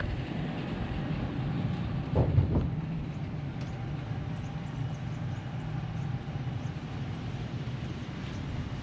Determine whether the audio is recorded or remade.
recorded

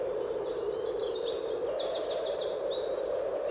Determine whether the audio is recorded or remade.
recorded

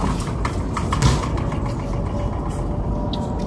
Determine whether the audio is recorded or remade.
recorded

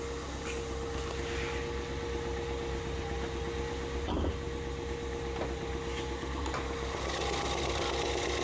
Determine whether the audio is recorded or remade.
recorded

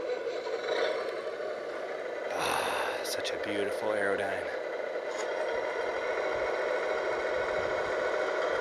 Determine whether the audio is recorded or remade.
recorded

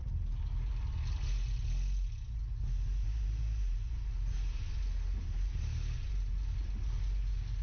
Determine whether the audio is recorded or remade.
recorded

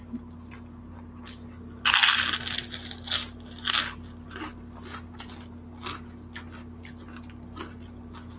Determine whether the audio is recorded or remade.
recorded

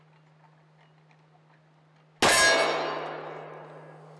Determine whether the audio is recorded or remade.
recorded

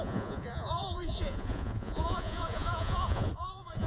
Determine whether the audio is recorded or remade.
remade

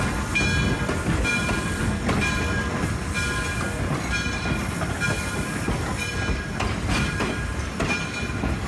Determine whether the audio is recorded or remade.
recorded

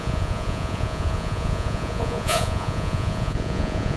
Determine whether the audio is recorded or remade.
remade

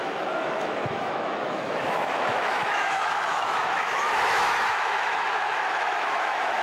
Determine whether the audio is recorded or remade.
remade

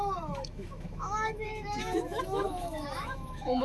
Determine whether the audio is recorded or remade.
remade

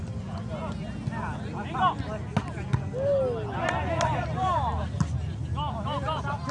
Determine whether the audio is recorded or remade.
recorded